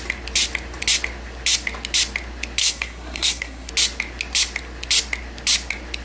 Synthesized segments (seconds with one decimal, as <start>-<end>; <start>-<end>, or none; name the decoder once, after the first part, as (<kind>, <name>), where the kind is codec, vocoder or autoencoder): 2.6-3.7 (codec, SNAC)